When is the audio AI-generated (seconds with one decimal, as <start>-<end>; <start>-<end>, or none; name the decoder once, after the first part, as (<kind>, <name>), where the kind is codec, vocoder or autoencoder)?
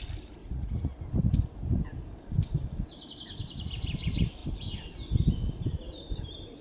0.4-1.0 (vocoder, Vocos)